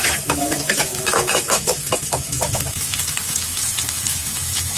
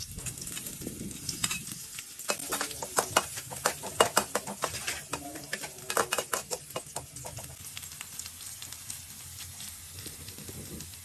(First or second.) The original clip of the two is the second